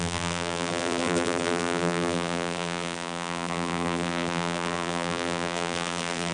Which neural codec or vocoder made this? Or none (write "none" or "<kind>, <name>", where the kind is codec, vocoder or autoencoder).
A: vocoder, BigVGAN v2